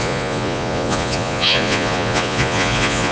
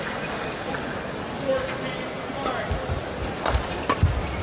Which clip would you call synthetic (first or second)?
first